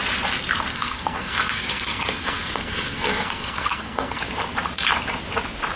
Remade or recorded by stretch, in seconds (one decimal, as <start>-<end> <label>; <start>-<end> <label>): 0.0-0.7 recorded; 0.7-4.2 remade; 4.2-5.8 recorded